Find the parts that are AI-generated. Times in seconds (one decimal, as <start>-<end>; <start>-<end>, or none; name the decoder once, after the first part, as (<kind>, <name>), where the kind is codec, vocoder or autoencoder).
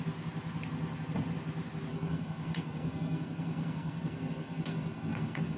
1.9-5.6 (codec, SNAC)